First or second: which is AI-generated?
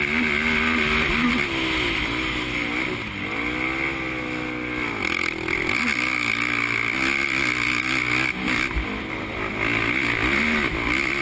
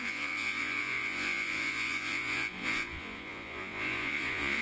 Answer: second